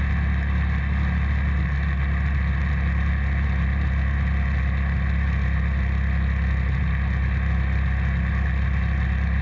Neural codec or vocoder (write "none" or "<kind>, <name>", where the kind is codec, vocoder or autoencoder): none